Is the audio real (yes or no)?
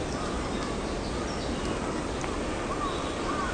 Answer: yes